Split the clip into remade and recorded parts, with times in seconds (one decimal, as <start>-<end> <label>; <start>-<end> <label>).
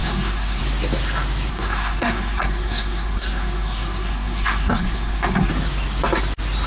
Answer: 0.0-0.6 remade; 0.6-1.5 recorded; 1.5-5.5 remade; 5.5-6.7 recorded